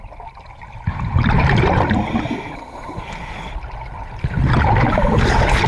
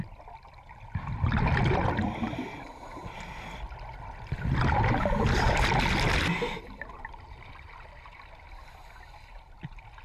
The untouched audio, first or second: second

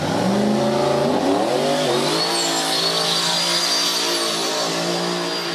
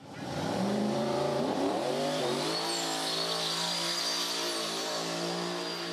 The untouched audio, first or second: first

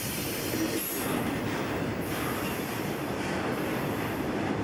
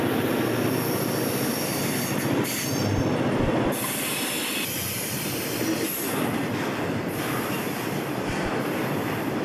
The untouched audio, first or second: first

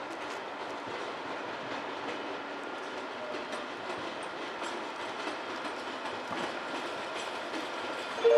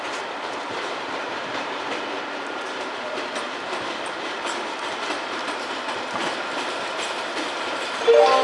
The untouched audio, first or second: first